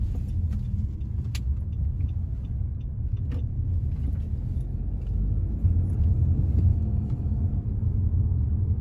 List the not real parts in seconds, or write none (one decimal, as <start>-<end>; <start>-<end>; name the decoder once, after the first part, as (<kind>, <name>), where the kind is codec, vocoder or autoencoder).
6.7-7.4 (autoencoder, DAC-VAE)